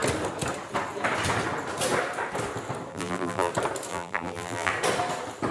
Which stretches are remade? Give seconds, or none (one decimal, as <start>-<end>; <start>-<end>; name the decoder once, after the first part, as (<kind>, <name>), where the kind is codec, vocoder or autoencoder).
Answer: 2.9-3.5 (vocoder, BigVGAN v2); 3.9-4.7